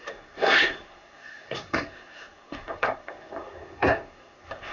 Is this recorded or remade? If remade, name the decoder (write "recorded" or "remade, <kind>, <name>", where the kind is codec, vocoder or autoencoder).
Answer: remade, codec, SNAC